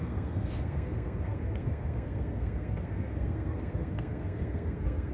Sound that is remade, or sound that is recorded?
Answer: remade